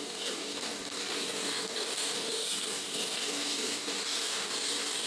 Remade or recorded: remade